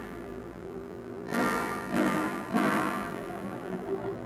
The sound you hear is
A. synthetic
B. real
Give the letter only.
A